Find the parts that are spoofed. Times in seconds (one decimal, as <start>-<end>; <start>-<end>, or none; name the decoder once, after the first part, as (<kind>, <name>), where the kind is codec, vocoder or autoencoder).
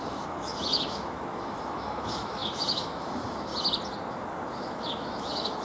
0.0-3.5 (autoencoder, DAC-VAE); 4.1-5.6